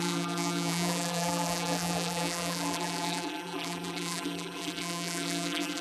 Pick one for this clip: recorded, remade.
remade